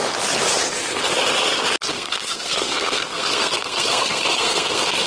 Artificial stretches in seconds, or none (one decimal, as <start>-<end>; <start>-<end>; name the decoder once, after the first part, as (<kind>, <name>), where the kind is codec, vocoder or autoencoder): 1.9-5.1 (codec, SNAC)